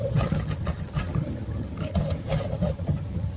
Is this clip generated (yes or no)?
yes